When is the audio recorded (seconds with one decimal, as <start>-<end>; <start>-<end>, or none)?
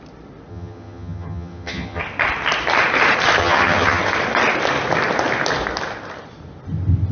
0.0-0.5; 2.0-3.4; 4.0-7.1